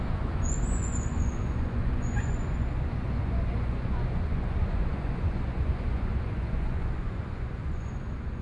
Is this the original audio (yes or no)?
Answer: no